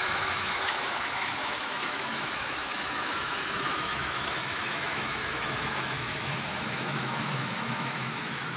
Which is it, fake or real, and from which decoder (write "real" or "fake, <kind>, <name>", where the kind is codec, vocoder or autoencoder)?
fake, autoencoder, DAC-VAE